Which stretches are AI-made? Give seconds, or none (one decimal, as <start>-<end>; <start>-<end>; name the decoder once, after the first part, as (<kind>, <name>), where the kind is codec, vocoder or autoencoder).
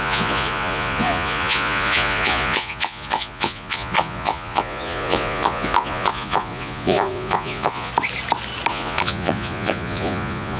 0.0-7.9 (vocoder, Vocos); 8.7-10.6